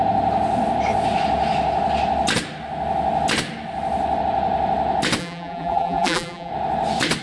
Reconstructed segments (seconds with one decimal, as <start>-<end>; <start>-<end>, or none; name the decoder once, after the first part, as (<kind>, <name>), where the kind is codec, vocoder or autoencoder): 5.2-6.5 (vocoder, BigVGAN v2)